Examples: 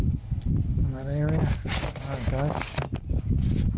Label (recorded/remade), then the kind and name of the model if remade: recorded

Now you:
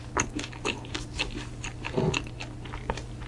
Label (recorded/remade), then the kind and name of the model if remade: recorded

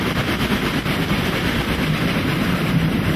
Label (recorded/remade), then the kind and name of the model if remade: remade, vocoder, BigVGAN v2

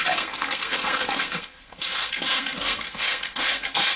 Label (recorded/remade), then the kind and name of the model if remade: remade, codec, SNAC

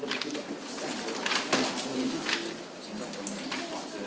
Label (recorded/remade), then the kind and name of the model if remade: recorded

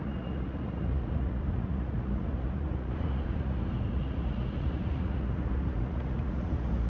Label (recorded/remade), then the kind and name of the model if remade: remade, vocoder, Vocos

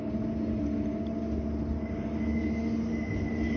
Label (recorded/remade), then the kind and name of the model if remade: recorded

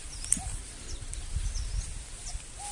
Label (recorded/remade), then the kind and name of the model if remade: recorded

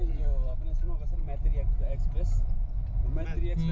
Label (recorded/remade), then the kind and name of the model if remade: recorded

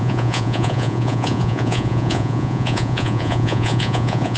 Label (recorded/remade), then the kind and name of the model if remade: remade, vocoder, Vocos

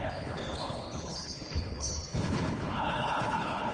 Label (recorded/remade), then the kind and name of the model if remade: remade, codec, HILCodec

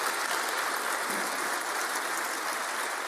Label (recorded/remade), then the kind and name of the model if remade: recorded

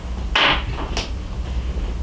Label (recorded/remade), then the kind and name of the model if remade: recorded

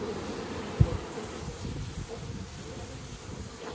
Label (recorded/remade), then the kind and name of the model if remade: recorded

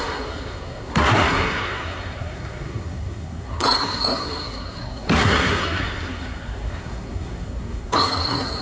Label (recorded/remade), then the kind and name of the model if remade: remade, codec, SNAC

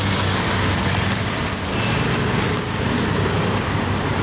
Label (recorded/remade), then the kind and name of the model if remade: recorded